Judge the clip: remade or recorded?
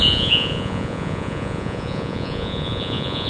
remade